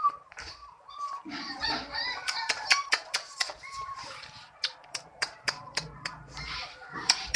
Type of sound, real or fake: fake